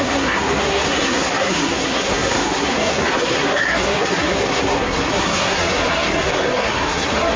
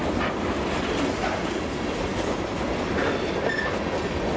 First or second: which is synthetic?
first